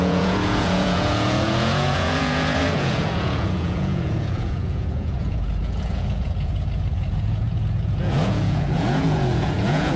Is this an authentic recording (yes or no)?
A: no